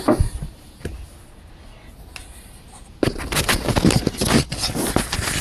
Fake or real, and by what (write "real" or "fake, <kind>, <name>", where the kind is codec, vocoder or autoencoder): real